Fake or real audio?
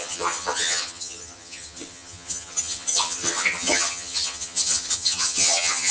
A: fake